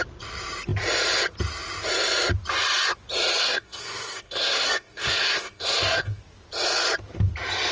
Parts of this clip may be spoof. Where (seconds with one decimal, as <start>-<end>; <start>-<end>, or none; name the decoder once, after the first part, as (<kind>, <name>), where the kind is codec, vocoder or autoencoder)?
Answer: 3.4-6.2 (codec, SNAC)